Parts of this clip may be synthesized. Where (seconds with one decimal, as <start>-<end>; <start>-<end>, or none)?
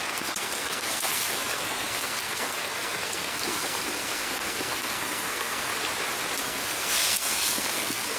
0.0-5.7; 6.4-8.2